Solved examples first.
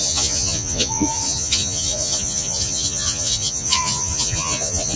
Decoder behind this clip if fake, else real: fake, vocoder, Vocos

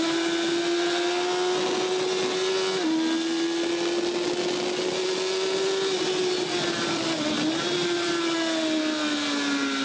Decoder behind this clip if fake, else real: real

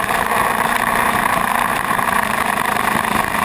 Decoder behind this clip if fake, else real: fake, vocoder, BigVGAN v2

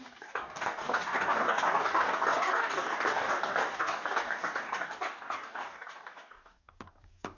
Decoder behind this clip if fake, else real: fake, codec, DAC